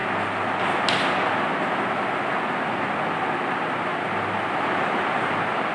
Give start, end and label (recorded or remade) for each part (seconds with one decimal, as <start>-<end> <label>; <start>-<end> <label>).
0.0-5.7 recorded